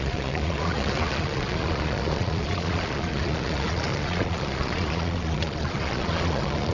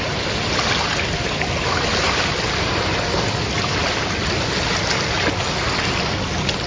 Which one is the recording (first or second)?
second